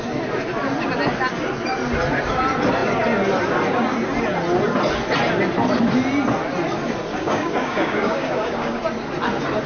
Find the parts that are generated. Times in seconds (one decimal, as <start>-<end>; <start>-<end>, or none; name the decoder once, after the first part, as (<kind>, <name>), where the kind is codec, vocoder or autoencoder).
7.1-8.8 (codec, DAC)